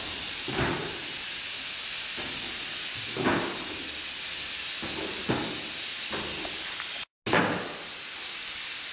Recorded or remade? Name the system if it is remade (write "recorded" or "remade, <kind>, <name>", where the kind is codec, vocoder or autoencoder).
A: recorded